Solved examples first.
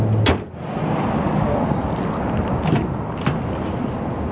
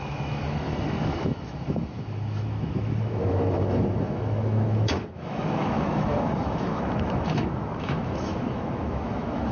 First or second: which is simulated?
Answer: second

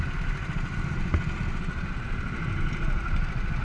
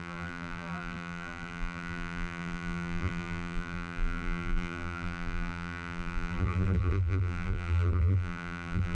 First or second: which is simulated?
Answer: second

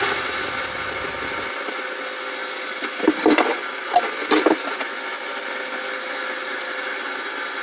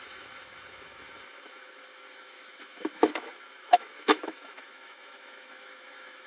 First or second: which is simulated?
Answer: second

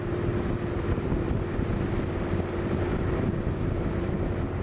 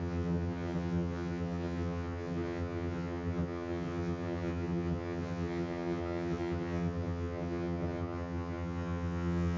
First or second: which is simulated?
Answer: second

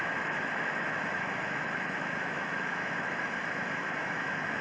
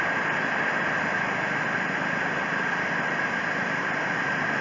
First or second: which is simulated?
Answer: first